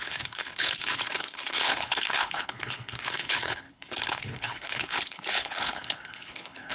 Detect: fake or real fake